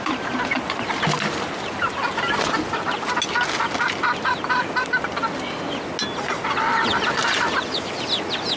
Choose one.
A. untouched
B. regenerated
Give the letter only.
A